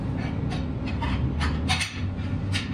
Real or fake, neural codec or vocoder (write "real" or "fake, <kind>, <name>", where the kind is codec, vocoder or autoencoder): real